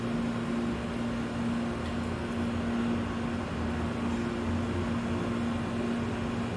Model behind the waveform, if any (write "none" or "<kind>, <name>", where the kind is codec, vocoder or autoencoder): none